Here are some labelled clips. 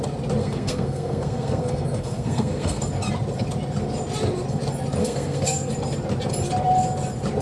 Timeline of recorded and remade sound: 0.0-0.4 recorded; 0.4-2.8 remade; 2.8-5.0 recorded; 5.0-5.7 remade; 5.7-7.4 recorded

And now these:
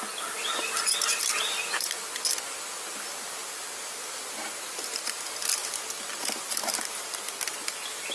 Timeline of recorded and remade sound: 0.0-8.1 recorded

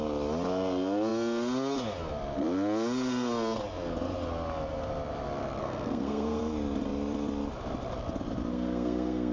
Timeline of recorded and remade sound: 0.0-5.6 recorded; 5.6-6.4 remade; 6.4-8.5 recorded; 8.5-9.3 remade

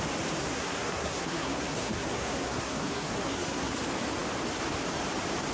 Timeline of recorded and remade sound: 0.0-0.4 recorded; 0.4-3.7 remade; 3.7-5.5 recorded

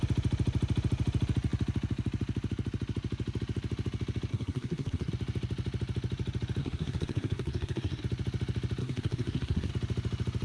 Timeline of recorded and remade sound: 0.0-4.3 recorded; 4.3-5.1 remade; 5.1-6.6 recorded; 6.6-8.0 remade; 8.0-8.8 recorded; 8.8-9.7 remade; 9.7-10.4 recorded

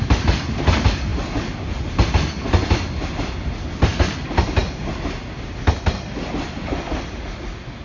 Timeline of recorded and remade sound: 0.0-7.8 recorded

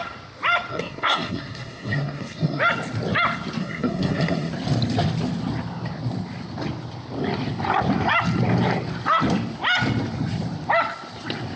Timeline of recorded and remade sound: 0.0-0.7 recorded; 0.7-2.6 remade; 2.6-3.6 recorded; 3.6-4.5 remade; 4.5-11.6 recorded

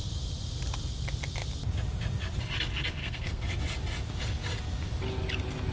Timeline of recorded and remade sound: 0.0-3.0 recorded; 3.0-3.6 remade; 3.6-5.7 recorded